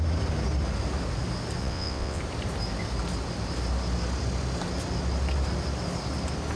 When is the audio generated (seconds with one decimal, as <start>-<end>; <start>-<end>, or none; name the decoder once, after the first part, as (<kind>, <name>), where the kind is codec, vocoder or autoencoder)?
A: 1.6-2.2 (vocoder, WaveNeXt)